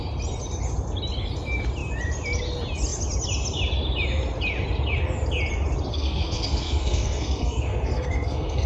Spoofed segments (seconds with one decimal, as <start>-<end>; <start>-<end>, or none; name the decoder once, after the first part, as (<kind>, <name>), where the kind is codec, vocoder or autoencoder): 5.9-8.7 (codec, SNAC)